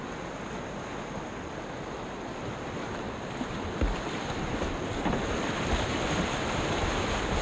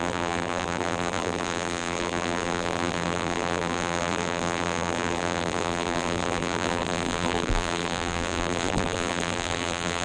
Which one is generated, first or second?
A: second